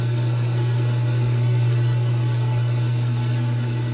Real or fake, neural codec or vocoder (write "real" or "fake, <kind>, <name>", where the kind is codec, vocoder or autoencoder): fake, codec, SNAC